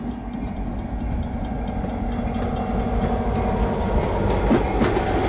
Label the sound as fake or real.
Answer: real